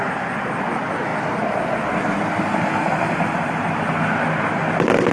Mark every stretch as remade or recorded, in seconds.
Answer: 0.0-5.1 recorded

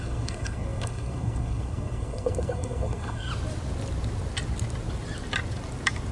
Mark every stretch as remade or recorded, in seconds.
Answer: 0.0-3.3 remade; 3.3-6.1 recorded

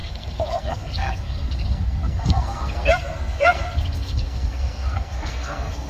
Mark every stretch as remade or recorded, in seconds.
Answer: 0.0-5.9 remade